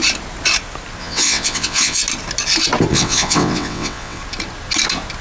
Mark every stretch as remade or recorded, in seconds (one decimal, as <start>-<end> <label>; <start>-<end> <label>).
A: 0.0-1.0 recorded; 1.0-2.0 remade; 2.0-2.9 recorded; 2.9-4.2 remade; 4.2-5.2 recorded